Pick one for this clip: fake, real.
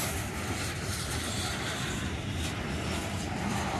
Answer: fake